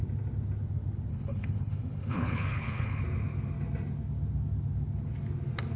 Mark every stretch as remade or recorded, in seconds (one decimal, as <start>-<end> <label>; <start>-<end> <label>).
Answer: 0.0-1.1 recorded; 1.1-3.0 remade; 3.0-5.8 recorded